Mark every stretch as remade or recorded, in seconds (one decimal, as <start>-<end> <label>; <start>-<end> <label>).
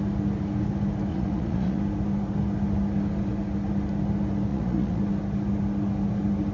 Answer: 0.0-1.1 recorded; 1.1-1.8 remade; 1.8-4.5 recorded; 4.5-5.0 remade; 5.0-6.5 recorded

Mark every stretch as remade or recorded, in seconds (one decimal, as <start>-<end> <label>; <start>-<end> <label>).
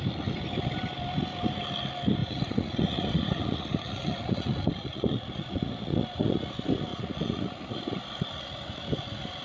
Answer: 0.0-2.2 recorded; 2.2-6.5 remade; 6.5-6.9 recorded; 6.9-8.0 remade; 8.0-9.4 recorded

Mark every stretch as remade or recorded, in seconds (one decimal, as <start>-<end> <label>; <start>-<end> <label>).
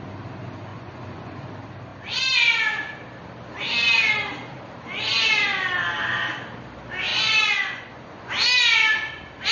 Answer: 0.0-0.7 recorded; 0.7-1.5 remade; 1.5-7.1 recorded; 7.1-8.3 remade; 8.3-9.5 recorded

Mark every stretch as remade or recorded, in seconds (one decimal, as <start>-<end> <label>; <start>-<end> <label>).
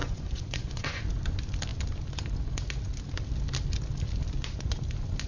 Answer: 0.0-1.0 remade; 1.0-5.3 recorded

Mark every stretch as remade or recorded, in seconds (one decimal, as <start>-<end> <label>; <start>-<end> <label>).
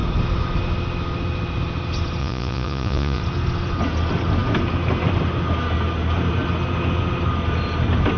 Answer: 0.0-2.2 recorded; 2.2-3.2 remade; 3.2-8.2 recorded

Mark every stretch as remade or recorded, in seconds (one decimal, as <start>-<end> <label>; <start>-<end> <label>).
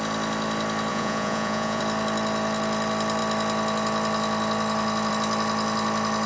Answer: 0.0-0.9 recorded; 0.9-1.8 remade; 1.8-6.3 recorded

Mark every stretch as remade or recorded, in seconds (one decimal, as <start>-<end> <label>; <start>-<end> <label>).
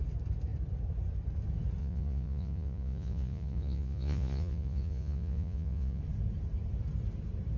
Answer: 0.0-1.8 recorded; 1.8-6.0 remade; 6.0-7.6 recorded